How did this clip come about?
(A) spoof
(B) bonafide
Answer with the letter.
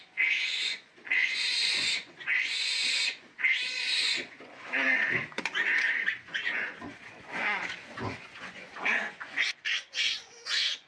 A